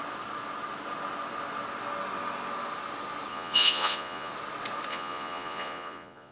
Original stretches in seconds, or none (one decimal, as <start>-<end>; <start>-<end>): 0.0-3.3; 4.3-4.9